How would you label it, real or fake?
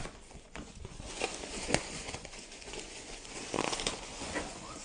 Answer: fake